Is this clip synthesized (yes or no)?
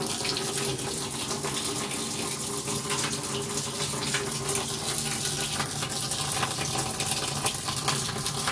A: no